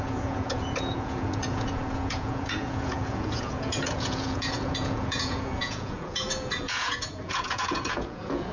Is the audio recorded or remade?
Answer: remade